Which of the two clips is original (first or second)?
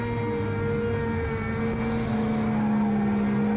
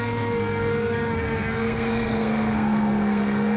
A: first